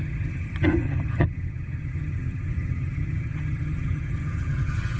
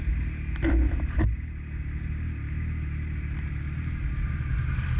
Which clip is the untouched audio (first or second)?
second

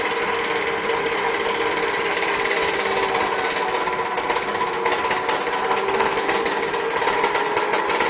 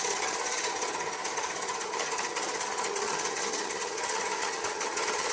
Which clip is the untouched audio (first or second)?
first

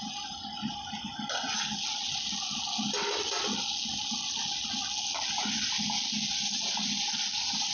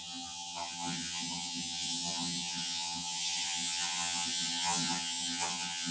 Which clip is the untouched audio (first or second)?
first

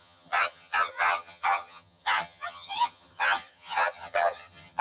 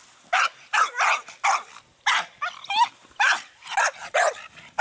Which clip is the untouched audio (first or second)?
second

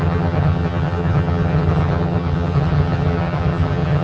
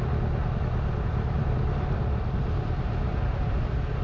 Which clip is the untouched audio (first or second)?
second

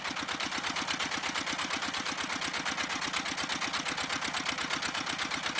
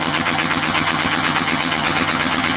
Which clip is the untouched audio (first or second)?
first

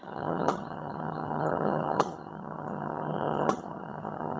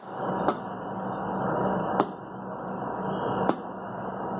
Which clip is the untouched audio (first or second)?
second